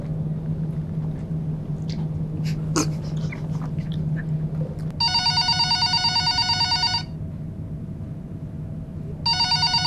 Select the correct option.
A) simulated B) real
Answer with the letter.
B